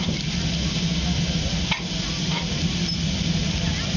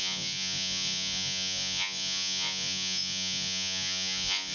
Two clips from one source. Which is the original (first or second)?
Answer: first